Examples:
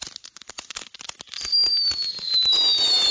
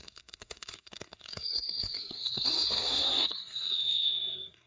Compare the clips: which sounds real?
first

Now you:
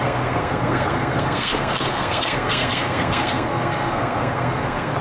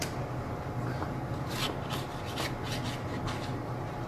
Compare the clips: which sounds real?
second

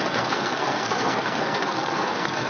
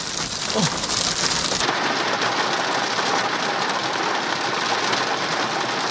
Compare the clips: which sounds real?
second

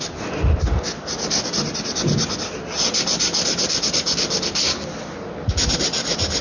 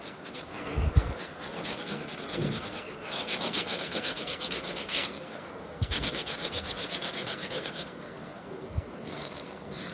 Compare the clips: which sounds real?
first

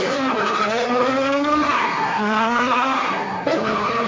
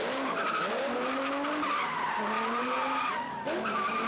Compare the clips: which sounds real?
second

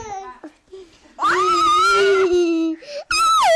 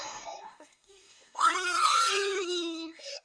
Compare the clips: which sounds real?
first